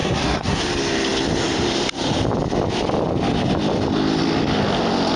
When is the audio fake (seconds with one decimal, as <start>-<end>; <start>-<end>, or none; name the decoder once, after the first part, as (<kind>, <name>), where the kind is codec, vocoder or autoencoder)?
0.0-0.6 (codec, SNAC)